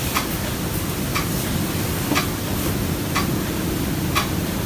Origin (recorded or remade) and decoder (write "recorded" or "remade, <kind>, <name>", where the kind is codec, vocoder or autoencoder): recorded